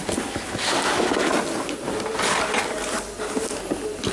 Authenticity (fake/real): real